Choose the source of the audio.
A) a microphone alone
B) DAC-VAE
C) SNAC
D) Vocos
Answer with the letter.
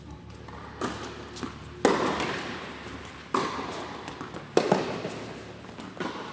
A